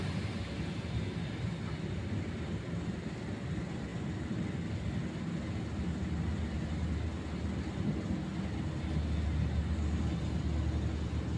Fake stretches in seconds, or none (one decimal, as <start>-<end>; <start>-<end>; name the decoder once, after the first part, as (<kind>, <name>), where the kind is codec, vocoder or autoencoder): none